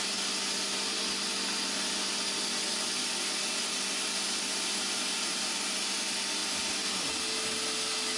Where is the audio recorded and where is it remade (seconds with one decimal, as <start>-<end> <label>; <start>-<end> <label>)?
0.0-8.2 recorded